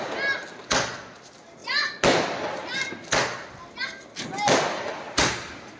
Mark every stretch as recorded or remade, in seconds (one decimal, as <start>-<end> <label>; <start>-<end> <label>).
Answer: 0.0-5.8 recorded